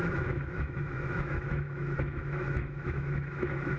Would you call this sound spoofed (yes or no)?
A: yes